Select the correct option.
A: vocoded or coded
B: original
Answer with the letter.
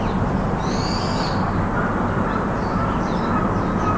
B